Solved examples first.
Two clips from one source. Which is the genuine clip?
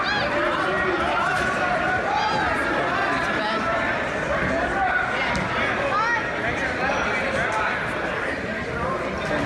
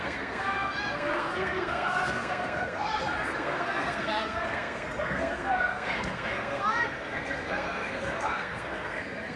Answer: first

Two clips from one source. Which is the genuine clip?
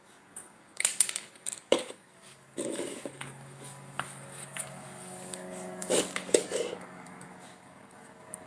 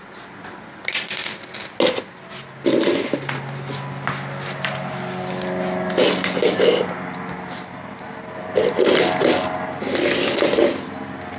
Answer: second